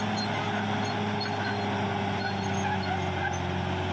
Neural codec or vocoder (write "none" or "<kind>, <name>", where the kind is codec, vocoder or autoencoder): none